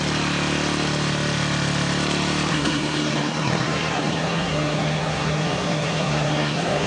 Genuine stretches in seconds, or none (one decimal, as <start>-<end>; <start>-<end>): 0.0-2.5